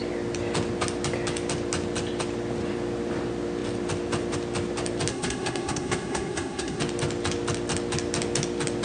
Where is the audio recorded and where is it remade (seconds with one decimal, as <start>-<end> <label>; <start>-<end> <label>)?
0.0-5.1 recorded; 5.1-6.8 remade; 6.8-8.8 recorded